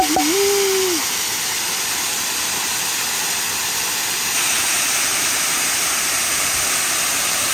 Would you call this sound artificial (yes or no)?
no